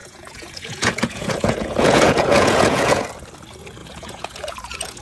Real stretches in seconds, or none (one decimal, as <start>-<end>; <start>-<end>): 3.0-3.8